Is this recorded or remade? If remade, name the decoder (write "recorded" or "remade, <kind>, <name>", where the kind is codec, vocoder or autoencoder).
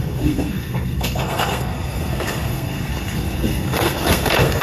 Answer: remade, codec, SNAC